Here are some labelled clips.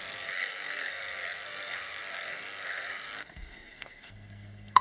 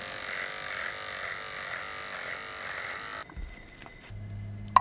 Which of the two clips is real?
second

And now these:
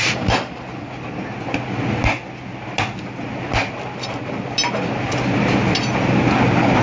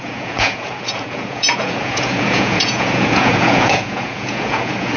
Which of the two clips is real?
first